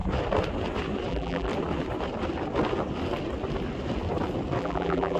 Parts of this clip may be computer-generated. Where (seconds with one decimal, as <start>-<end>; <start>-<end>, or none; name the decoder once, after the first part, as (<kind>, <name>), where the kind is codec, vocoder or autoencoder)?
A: 1.1-1.5 (vocoder, BigVGAN v2); 4.6-5.2